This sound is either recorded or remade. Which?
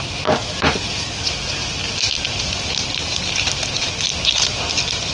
recorded